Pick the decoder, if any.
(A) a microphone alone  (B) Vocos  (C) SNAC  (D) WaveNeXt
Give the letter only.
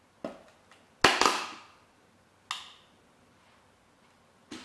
A